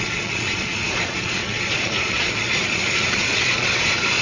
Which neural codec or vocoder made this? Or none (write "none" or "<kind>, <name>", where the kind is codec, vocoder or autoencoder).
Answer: vocoder, Vocos